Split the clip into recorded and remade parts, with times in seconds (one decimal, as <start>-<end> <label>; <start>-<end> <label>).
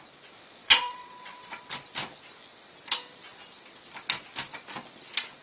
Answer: 0.0-0.6 recorded; 0.6-1.6 remade; 1.6-5.4 recorded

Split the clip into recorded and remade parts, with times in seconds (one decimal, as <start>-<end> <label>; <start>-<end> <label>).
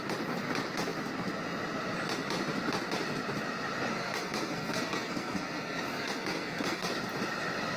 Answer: 0.0-3.9 recorded; 3.9-6.9 remade; 6.9-7.8 recorded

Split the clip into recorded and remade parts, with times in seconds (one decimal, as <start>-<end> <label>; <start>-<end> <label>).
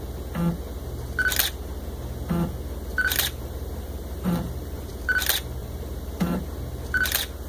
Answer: 0.0-2.9 recorded; 2.9-4.9 remade; 4.9-5.6 recorded; 5.6-6.6 remade; 6.6-7.5 recorded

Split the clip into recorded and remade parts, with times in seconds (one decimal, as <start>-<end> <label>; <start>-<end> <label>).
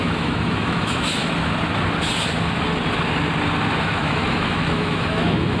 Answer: 0.0-1.2 remade; 1.2-3.8 recorded; 3.8-5.6 remade